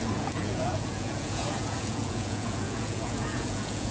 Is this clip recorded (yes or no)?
no